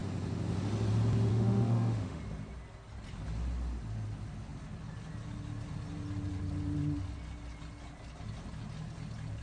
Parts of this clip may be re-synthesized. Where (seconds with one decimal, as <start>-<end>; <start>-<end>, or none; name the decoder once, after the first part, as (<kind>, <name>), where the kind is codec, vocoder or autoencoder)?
1.3-2.2 (autoencoder, DAC-VAE)